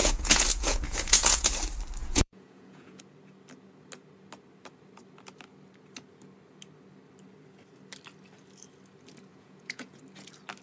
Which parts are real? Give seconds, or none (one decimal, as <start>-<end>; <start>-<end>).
1.5-2.0; 3.0-9.3; 10.0-10.6